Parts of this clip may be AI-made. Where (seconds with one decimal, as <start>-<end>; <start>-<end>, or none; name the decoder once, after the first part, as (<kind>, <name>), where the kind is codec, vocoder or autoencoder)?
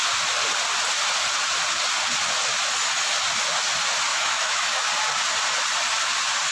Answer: 4.1-4.9 (autoencoder, DAC-VAE)